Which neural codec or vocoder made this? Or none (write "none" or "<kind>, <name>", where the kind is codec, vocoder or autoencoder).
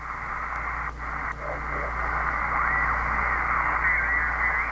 none